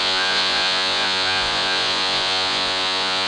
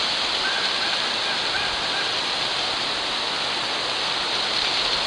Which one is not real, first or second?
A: first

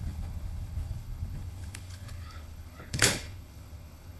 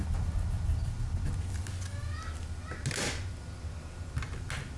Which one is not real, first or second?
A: first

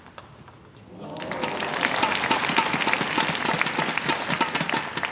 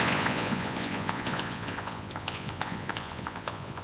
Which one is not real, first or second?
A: second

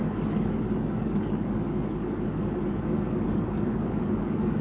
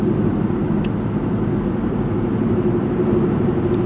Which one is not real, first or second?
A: first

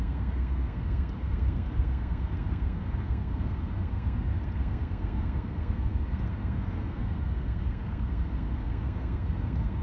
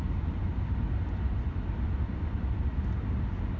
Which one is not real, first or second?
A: first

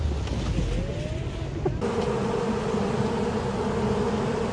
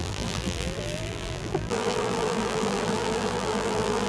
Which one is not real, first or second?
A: second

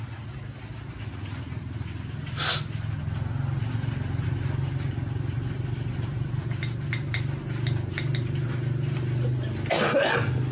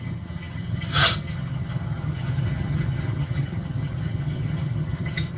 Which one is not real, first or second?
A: second